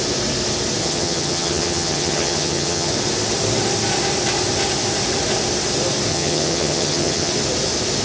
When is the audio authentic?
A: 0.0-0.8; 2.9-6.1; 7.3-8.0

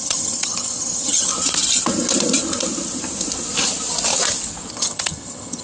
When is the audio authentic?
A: 1.3-4.7

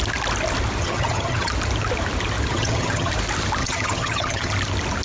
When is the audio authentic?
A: 0.0-0.8; 1.5-2.5; 3.1-3.6; 4.5-5.0

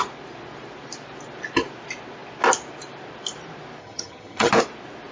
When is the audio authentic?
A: 0.0-3.8; 4.5-5.1

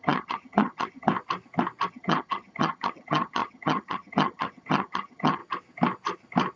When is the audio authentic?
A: 1.1-1.9; 5.4-6.6

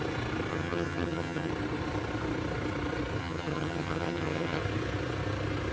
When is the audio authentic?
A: 0.0-0.5; 1.5-3.2; 4.6-5.7

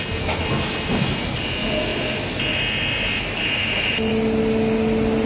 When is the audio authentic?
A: 0.0-5.3

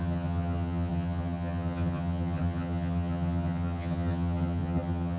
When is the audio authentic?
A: none